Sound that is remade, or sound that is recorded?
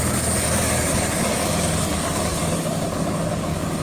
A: remade